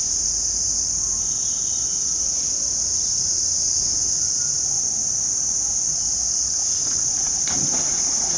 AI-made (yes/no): no